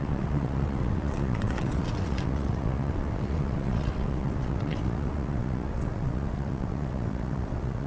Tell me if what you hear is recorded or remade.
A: remade